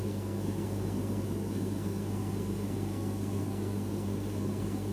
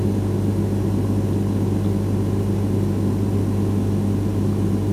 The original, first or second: second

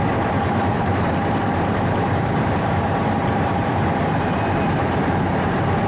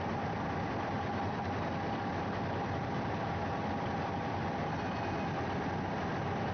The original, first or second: second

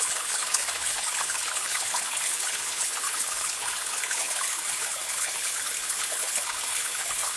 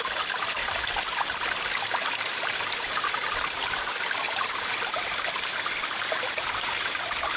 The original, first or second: second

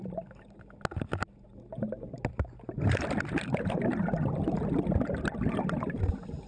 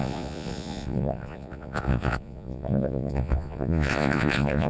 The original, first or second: first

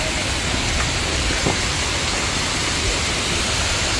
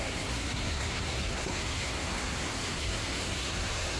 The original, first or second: first